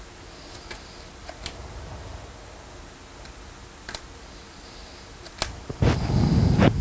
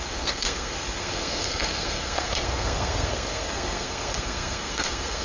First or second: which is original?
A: first